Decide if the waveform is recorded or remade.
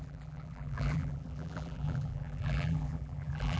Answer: remade